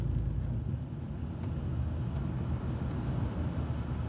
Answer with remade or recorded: recorded